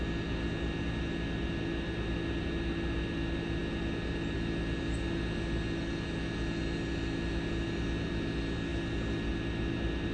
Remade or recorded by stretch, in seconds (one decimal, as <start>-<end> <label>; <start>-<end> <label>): 0.0-10.1 recorded